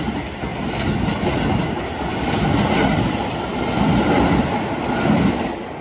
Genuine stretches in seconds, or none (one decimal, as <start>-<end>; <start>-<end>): 0.0-5.8